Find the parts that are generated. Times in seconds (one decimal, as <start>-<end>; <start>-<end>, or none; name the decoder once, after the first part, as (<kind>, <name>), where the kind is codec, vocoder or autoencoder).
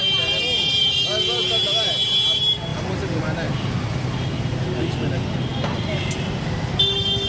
none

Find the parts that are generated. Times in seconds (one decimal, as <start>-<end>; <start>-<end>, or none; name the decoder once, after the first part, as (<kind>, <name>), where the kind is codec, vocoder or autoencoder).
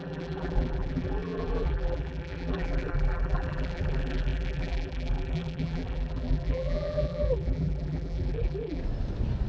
0.0-8.8 (vocoder, BigVGAN v2)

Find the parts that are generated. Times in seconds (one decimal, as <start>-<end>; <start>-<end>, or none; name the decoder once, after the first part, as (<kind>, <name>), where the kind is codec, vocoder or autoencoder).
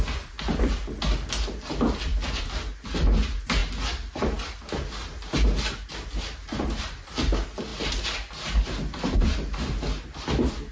none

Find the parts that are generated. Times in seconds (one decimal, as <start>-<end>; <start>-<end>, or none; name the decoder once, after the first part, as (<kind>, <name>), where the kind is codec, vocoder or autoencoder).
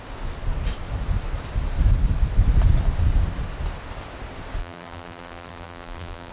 4.6-6.3 (vocoder, BigVGAN v2)